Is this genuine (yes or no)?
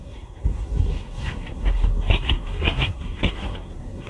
no